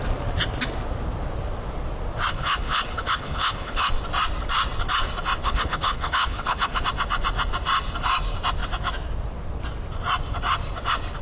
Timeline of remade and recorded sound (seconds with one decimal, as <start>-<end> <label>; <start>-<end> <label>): 0.0-2.3 recorded; 2.3-3.9 remade; 3.9-5.4 recorded; 5.4-6.8 remade; 6.8-11.2 recorded